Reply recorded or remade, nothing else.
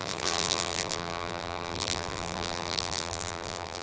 remade